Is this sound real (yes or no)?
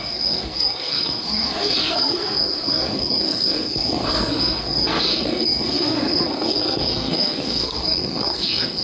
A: no